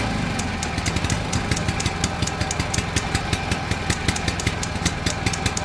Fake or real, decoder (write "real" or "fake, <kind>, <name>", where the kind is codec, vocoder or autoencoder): real